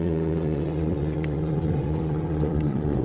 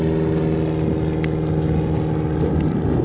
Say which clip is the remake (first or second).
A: first